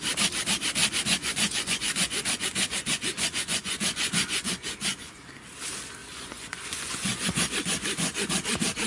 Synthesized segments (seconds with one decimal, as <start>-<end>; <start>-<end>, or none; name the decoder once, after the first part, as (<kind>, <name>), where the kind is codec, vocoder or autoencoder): 0.8-5.3 (vocoder, Vocos); 6.0-8.3